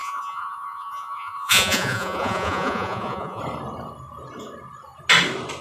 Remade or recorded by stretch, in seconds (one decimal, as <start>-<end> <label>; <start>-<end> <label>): 0.0-3.4 remade; 3.4-5.6 recorded